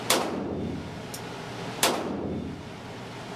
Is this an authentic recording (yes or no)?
yes